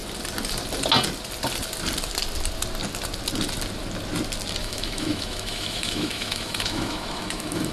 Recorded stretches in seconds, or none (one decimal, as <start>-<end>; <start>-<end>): 0.0-4.6